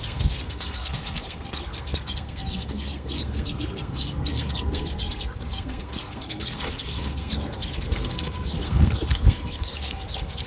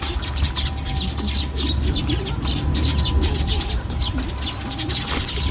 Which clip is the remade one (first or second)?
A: first